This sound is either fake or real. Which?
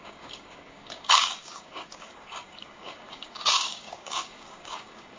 fake